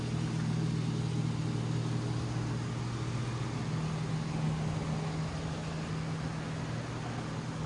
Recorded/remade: recorded